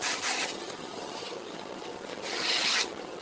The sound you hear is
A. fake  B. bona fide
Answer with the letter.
A